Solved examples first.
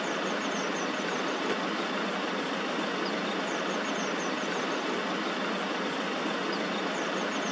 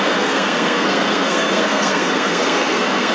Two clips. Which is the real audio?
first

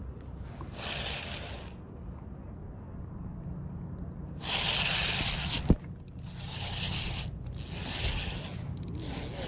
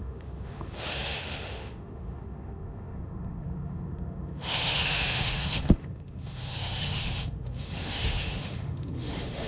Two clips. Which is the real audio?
first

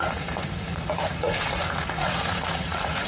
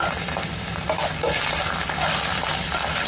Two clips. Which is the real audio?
second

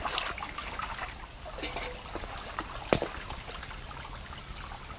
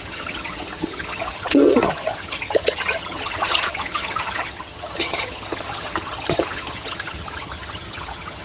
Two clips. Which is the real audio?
first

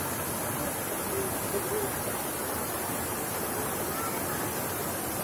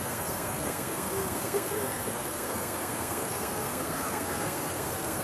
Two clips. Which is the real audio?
first